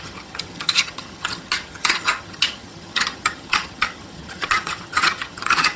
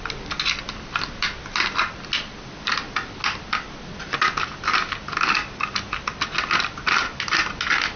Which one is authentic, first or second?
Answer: second